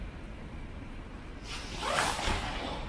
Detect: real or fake real